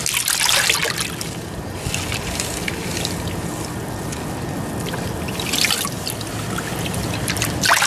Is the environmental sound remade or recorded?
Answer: recorded